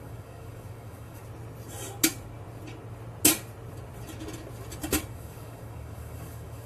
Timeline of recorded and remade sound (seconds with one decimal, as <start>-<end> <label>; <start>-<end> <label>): 0.0-1.2 remade; 1.2-5.1 recorded; 5.1-6.7 remade